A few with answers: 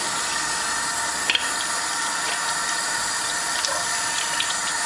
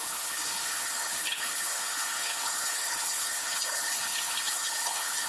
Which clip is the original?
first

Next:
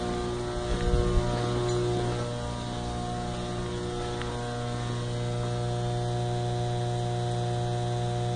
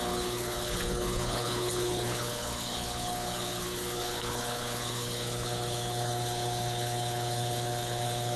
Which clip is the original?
first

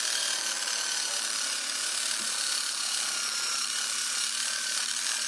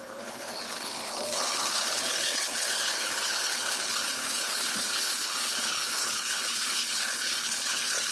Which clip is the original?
first